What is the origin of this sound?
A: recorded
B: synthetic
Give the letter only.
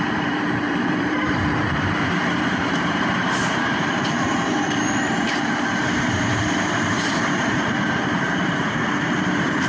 B